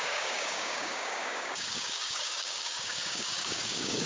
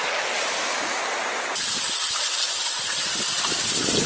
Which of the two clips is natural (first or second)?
second